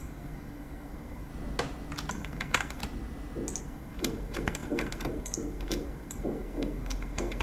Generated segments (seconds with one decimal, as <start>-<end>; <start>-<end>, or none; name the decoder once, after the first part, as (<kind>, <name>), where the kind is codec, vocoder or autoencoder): 0.0-1.3 (codec, SNAC); 2.1-2.8; 3.6-7.4